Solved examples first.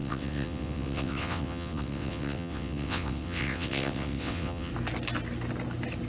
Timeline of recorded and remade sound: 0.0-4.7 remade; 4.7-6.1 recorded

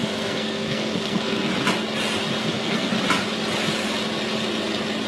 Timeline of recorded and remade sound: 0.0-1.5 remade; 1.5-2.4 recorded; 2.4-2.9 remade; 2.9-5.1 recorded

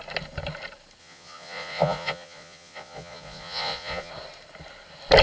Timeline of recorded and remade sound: 0.0-1.0 recorded; 1.0-4.1 remade; 4.1-5.2 recorded

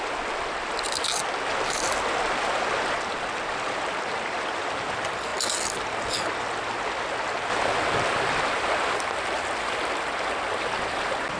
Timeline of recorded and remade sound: 0.0-11.4 recorded

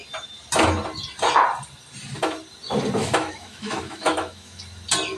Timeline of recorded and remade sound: 0.0-3.0 recorded; 3.0-4.6 remade; 4.6-5.2 recorded